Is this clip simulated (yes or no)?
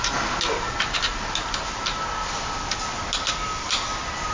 no